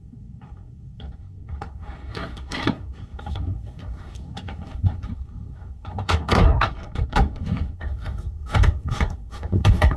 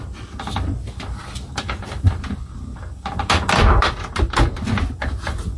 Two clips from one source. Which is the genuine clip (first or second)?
second